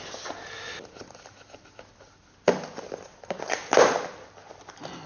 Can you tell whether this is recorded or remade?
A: recorded